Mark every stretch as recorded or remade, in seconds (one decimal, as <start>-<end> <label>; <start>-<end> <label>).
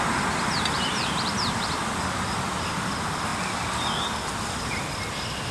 0.0-0.9 recorded; 0.9-1.8 remade; 1.8-5.5 recorded